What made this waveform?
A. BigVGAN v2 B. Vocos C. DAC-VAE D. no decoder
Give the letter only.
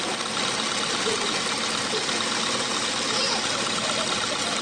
D